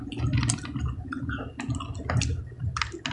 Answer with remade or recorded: recorded